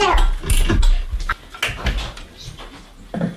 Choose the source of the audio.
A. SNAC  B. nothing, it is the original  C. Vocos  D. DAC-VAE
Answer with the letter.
B